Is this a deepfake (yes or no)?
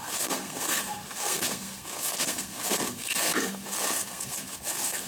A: yes